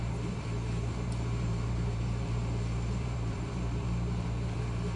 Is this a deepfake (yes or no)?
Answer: yes